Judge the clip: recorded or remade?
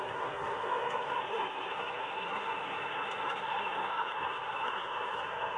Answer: remade